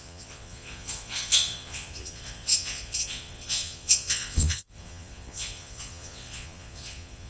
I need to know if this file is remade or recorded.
remade